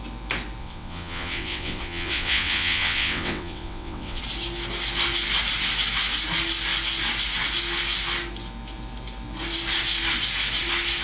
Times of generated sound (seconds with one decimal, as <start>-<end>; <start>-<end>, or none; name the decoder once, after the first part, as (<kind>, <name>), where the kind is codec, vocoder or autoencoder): 0.6-4.2 (vocoder, WaveNeXt)